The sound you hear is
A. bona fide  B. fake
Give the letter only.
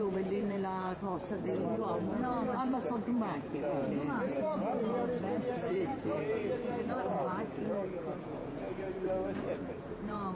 B